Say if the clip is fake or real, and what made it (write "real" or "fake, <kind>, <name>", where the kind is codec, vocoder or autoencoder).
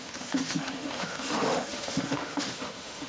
fake, autoencoder, DAC-VAE